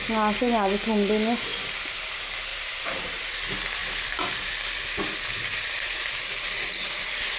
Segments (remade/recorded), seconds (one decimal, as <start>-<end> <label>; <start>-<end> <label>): 0.0-2.5 recorded; 2.5-3.4 remade; 3.4-3.8 recorded; 3.8-4.5 remade; 4.5-5.5 recorded; 5.5-6.1 remade; 6.1-7.4 recorded